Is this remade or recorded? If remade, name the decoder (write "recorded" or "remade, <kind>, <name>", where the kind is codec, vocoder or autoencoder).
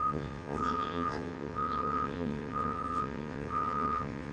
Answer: remade, vocoder, WaveNeXt